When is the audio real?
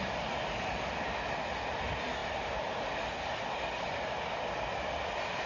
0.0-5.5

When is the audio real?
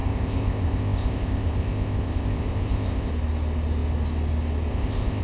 3.1-4.7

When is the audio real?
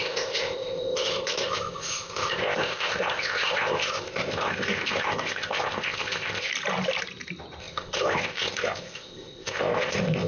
6.5-7.6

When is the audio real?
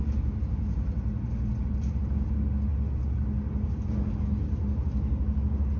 0.0-5.8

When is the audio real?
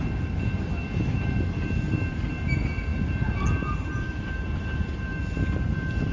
0.0-6.1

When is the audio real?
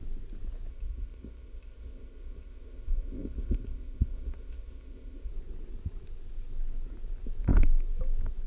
0.0-0.7; 5.3-8.5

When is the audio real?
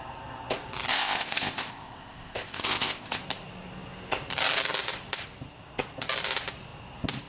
0.0-0.9; 3.2-7.3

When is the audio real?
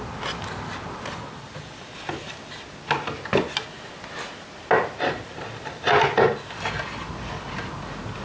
0.0-8.2